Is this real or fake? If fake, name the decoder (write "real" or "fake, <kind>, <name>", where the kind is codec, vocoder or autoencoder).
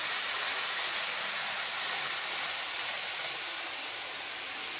real